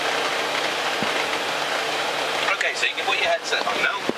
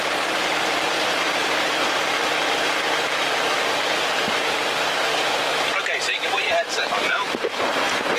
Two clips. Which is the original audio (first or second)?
first